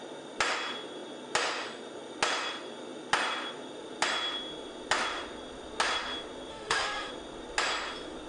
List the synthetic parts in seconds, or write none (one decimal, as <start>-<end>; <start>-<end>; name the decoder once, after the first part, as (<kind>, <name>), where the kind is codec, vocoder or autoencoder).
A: 6.5-7.1 (autoencoder, DAC-VAE)